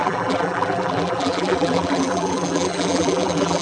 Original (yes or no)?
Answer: no